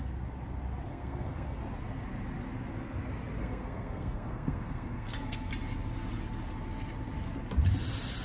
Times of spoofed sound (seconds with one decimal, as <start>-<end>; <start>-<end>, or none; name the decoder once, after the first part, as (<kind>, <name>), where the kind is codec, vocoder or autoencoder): 0.9-1.6 (codec, SNAC); 3.4-5.5